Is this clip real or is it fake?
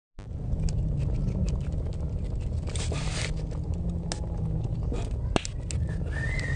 real